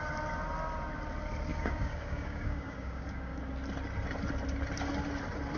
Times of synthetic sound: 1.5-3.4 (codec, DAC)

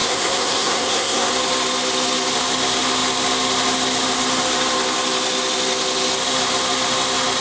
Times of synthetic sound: 0.0-1.3 (codec, SNAC)

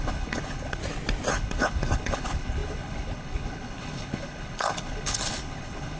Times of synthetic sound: 0.0-0.8 (codec, HILCodec); 1.3-6.0

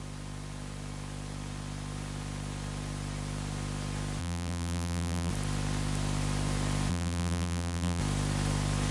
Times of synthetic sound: 4.2-5.3 (vocoder, BigVGAN v2); 6.9-8.0

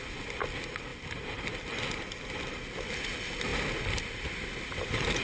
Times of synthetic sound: none

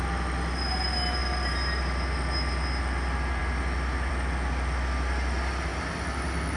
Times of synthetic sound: none

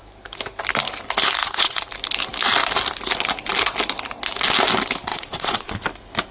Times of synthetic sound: 1.4-1.9 (vocoder, Vocos); 5.1-5.7